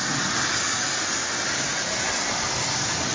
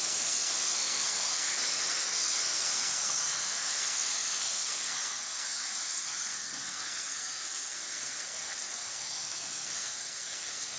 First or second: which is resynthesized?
second